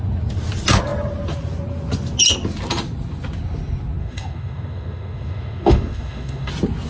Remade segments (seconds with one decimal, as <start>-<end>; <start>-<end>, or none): 4.0-6.5